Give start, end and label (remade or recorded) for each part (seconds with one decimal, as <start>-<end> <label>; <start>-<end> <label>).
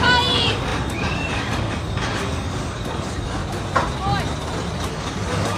0.0-3.4 remade; 3.4-4.9 recorded; 4.9-5.6 remade